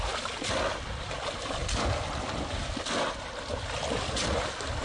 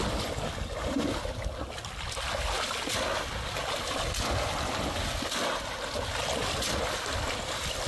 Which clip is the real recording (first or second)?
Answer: second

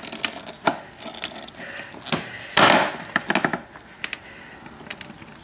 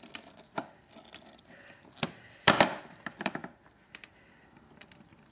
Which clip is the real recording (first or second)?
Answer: first